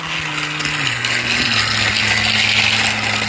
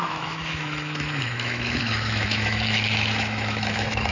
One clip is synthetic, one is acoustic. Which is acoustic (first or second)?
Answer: first